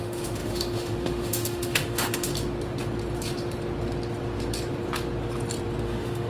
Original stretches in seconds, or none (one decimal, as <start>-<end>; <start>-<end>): 2.3-5.8